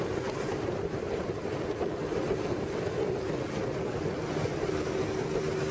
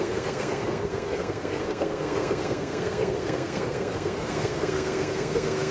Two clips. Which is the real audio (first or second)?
first